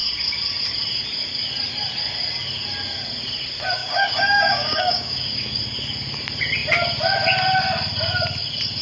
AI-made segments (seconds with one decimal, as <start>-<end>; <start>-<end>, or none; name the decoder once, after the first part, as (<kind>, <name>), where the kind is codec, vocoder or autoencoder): 3.8-5.6 (codec, DAC)